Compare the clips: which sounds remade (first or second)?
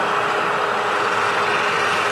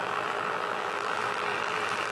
second